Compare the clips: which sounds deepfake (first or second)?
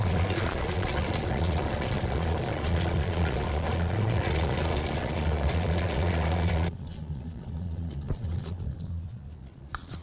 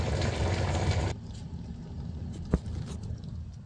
first